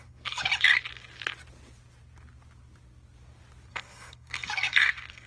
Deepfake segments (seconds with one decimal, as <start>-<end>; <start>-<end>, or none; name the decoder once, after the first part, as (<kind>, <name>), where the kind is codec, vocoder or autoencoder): 0.0-0.5 (codec, SNAC); 3.7-5.3